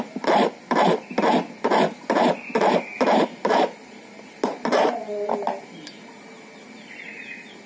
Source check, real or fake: real